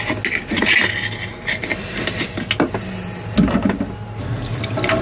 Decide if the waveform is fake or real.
real